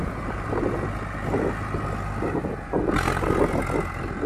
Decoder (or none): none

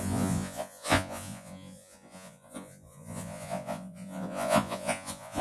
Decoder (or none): vocoder, Vocos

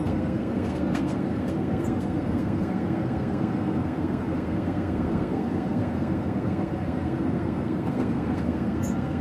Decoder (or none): codec, SNAC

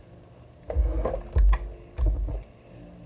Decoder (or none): none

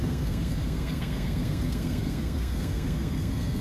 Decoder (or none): codec, SNAC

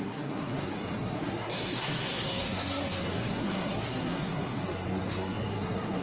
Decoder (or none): codec, SNAC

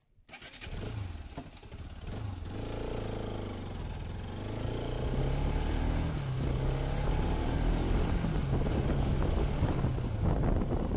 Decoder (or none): none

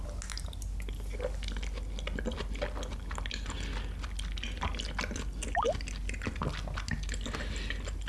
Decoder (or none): none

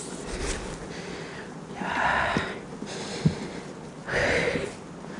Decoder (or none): none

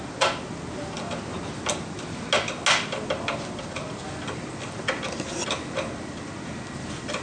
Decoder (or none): none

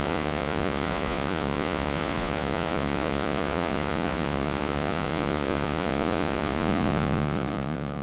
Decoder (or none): vocoder, Vocos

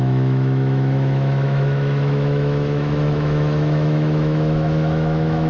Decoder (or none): autoencoder, DAC-VAE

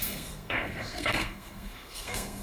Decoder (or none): codec, SNAC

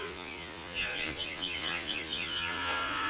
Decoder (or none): vocoder, Vocos